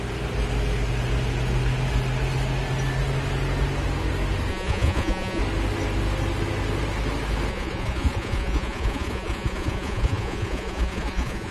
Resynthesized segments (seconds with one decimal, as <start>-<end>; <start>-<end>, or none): 4.5-5.4; 7.5-11.5